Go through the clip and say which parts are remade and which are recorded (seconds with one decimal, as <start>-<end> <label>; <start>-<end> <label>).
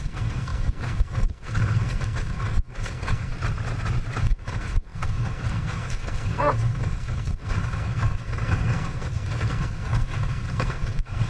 0.0-3.3 remade; 3.3-4.2 recorded; 4.2-11.3 remade